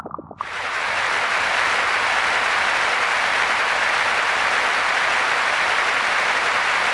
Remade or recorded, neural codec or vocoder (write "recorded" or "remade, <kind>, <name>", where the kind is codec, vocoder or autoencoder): recorded